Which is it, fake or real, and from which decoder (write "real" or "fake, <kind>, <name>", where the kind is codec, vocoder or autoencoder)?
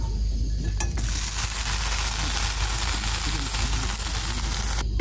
real